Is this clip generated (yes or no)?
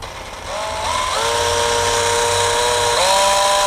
no